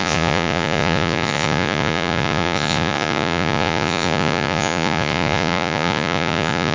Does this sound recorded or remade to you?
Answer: remade